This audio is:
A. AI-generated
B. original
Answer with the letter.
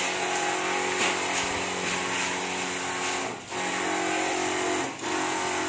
B